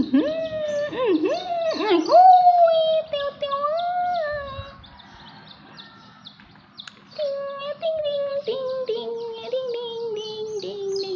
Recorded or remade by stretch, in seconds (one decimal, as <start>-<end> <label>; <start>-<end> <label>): 0.0-11.2 recorded